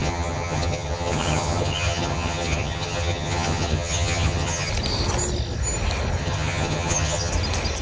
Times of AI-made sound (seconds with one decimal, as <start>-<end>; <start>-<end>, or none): 0.0-4.7; 6.2-7.3